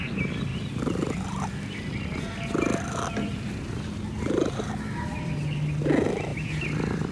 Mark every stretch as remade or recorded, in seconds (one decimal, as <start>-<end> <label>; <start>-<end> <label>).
0.0-0.5 recorded; 0.5-1.7 remade; 1.7-6.3 recorded; 6.3-7.1 remade